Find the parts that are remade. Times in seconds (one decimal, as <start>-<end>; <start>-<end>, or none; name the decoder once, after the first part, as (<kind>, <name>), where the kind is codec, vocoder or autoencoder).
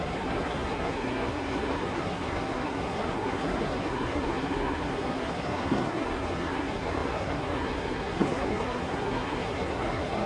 0.0-10.3 (codec, SNAC)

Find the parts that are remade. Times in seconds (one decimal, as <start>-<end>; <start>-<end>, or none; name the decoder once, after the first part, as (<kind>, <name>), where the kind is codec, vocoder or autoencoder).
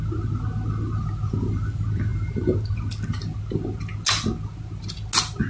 none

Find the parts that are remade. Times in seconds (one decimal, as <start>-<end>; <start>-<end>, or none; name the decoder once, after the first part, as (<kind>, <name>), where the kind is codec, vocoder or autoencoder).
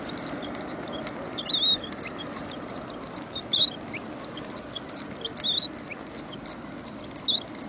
none